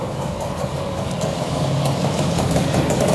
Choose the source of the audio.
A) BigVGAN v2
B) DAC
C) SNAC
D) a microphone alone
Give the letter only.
B